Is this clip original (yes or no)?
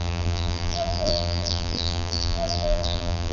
no